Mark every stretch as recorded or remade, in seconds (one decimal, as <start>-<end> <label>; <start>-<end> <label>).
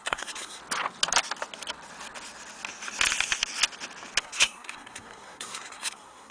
0.0-0.6 remade; 0.6-4.2 recorded; 4.2-6.3 remade